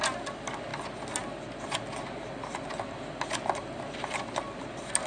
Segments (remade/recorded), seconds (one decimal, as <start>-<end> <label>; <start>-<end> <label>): 0.0-5.1 recorded